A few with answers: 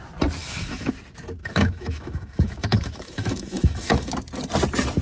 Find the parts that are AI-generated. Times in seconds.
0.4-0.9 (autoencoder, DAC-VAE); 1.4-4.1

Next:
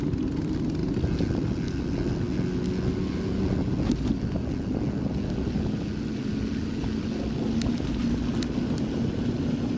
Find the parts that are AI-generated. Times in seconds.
none

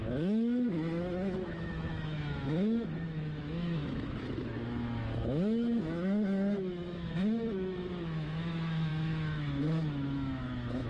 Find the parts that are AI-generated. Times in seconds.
0.0-10.9 (autoencoder, DAC-VAE)

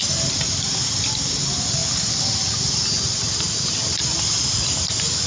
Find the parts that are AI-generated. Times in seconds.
none

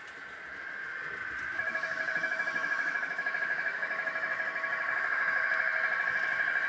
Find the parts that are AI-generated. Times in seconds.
1.5-5.5 (autoencoder, DAC-VAE)